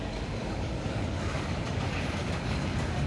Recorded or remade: remade